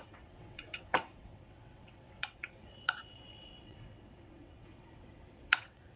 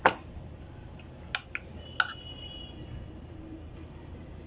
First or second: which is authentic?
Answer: second